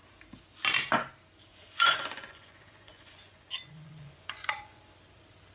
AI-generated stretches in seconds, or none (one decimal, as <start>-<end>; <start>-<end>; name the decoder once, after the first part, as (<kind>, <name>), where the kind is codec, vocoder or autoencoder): 1.5-4.8 (vocoder, Vocos)

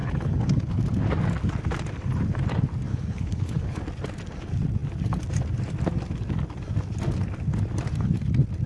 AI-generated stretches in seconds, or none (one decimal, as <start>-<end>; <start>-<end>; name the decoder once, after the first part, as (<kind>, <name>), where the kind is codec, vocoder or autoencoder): 0.0-0.8 (codec, HILCodec); 2.9-3.8

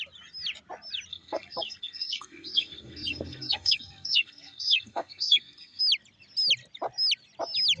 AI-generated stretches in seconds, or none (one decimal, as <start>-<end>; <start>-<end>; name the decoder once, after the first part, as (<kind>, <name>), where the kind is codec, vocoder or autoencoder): 1.1-5.8 (codec, SNAC)

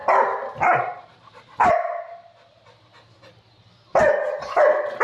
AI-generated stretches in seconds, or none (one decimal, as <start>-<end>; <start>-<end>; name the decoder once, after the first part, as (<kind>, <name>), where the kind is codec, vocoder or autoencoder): 0.0-1.7 (vocoder, BigVGAN v2); 4.0-4.6

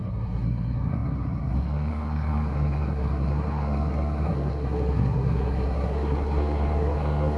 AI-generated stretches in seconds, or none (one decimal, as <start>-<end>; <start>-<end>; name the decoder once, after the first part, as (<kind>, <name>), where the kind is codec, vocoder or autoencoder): 0.0-7.4 (codec, SNAC)

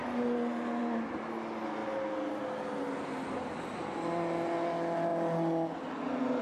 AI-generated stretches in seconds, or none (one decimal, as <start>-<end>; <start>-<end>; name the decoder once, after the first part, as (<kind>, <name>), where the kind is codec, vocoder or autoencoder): none

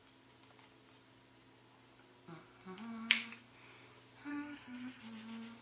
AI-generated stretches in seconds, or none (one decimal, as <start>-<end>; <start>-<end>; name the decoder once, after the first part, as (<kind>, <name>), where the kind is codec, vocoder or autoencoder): 4.3-5.0 (codec, SNAC)